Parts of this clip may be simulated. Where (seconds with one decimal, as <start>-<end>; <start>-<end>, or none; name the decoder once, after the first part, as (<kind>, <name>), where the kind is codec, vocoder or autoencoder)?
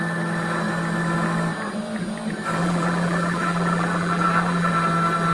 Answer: 2.6-4.7 (vocoder, BigVGAN v2)